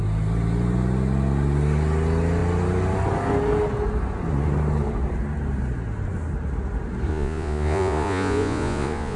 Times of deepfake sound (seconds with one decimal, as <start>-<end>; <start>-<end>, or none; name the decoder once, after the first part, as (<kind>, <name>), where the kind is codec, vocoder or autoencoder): 7.1-9.2 (vocoder, Vocos)